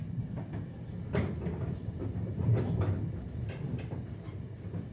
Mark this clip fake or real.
real